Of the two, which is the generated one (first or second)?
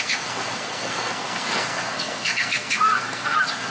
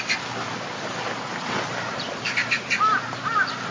first